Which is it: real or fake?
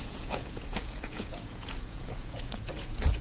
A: fake